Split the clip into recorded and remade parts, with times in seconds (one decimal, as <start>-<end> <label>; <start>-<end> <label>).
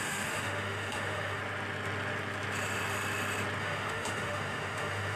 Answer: 0.0-1.4 remade; 1.4-3.6 recorded; 3.6-5.2 remade